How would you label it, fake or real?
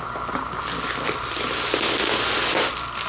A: real